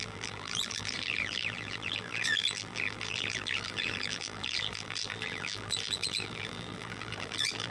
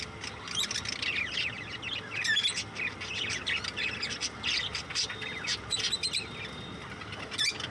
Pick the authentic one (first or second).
second